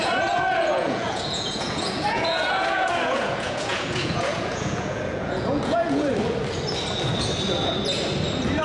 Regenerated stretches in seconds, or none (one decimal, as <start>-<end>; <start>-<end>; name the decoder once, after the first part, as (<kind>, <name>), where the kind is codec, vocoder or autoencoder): 0.0-6.1 (vocoder, Vocos)

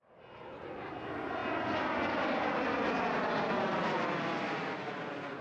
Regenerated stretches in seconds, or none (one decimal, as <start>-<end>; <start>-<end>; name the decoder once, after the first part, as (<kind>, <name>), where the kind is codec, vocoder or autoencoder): none

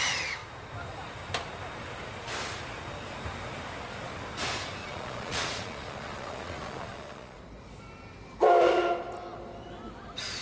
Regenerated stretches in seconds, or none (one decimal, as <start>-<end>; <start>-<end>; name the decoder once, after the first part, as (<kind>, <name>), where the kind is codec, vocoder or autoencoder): 4.8-7.4 (vocoder, Vocos)

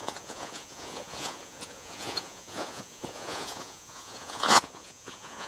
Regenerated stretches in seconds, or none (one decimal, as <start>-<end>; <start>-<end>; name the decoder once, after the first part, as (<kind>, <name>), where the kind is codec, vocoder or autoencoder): 0.0-5.5 (vocoder, Vocos)

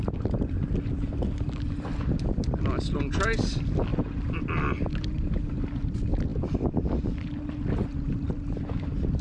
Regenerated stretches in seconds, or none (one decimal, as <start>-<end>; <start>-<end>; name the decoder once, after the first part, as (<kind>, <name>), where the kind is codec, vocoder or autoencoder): 6.3-6.8 (vocoder, BigVGAN v2)

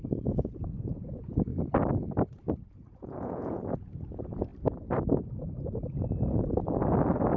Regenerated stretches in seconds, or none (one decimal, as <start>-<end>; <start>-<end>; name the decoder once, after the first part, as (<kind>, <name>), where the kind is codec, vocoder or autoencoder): 0.0-1.5 (vocoder, Vocos); 2.5-4.5